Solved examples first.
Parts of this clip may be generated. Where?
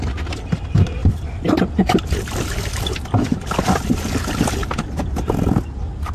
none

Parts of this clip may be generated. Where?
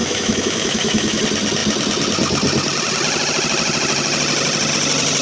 0.0-1.2 (autoencoder, DAC-VAE)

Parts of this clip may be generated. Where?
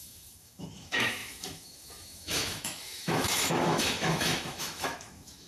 0.0-5.5 (autoencoder, DAC-VAE)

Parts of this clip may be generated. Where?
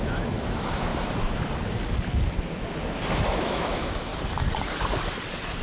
0.0-0.9 (autoencoder, DAC-VAE); 3.1-4.1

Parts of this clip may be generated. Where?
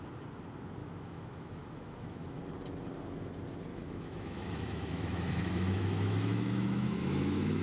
0.8-2.4 (autoencoder, DAC-VAE); 3.7-7.6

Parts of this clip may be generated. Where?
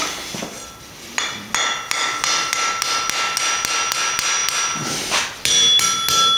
none